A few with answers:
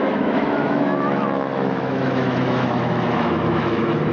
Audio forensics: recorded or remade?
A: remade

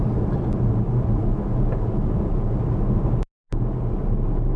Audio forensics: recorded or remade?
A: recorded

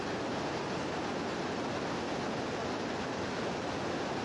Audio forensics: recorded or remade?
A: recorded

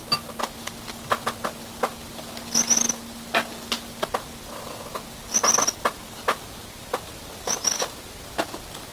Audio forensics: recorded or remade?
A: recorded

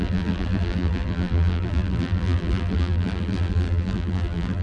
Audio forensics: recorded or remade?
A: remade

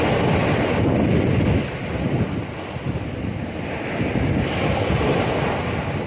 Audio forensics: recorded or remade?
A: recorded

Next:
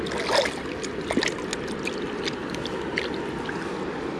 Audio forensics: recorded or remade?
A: recorded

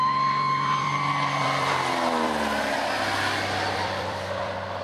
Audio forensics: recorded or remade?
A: remade